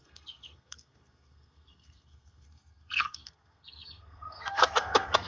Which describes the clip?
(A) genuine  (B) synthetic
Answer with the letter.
B